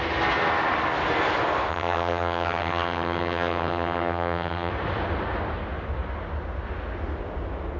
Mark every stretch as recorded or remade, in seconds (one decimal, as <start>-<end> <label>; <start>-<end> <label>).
0.0-1.7 recorded; 1.7-4.7 remade; 4.7-7.8 recorded